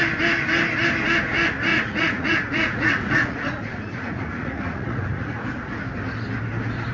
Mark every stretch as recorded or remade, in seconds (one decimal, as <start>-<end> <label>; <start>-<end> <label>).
0.0-1.7 recorded; 1.7-5.8 remade; 5.8-6.9 recorded